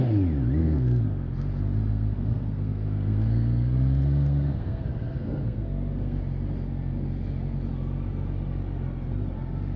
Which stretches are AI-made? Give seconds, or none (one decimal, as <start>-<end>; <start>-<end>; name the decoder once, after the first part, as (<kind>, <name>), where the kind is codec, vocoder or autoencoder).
0.6-1.3 (codec, SNAC); 1.9-6.2